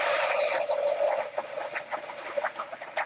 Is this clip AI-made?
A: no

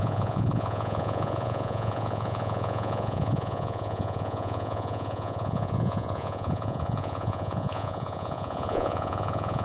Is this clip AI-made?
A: yes